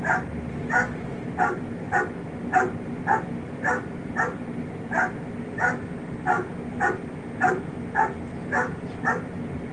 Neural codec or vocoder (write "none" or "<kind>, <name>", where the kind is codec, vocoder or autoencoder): none